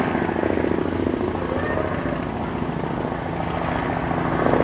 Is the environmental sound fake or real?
real